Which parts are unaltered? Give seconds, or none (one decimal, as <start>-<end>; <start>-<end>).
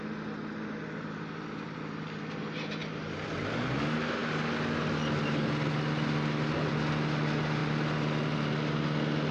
0.0-9.3